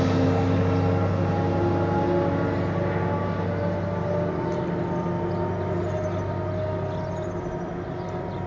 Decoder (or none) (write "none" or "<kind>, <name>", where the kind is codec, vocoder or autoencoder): none